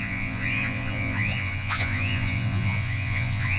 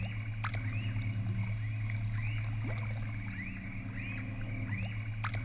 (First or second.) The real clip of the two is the second